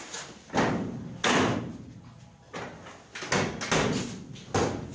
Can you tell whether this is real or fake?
real